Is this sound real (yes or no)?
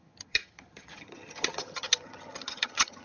no